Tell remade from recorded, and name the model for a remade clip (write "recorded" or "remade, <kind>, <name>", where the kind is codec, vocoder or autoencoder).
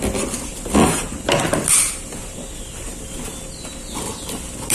recorded